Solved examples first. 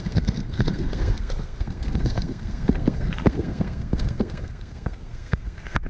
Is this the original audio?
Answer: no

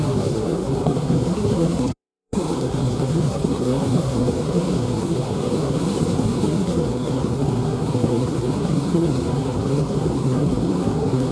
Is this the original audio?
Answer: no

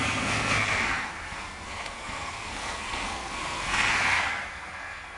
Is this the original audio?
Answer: no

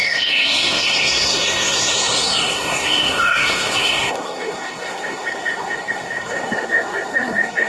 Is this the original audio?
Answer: no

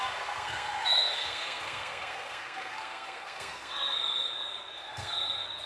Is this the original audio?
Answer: no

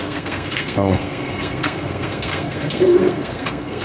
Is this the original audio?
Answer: no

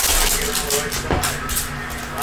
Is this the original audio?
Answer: yes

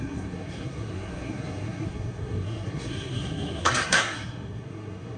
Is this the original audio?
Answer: no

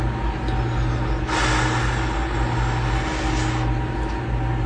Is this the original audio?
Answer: yes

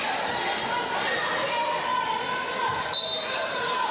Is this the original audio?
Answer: yes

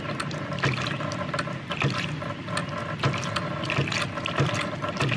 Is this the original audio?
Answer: yes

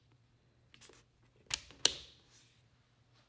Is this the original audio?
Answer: yes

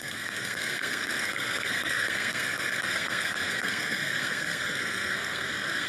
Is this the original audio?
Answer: no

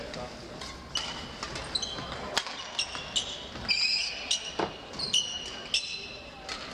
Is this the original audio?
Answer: yes